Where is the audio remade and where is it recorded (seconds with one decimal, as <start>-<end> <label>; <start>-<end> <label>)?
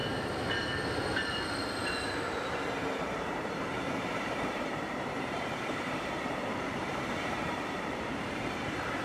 0.0-2.0 recorded; 2.0-9.0 remade